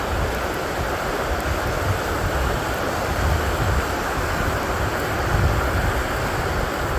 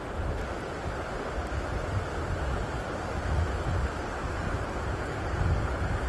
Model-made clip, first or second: first